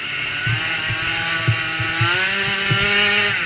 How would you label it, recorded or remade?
recorded